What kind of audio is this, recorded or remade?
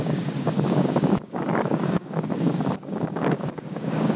remade